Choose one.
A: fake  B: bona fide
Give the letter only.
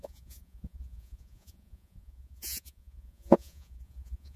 A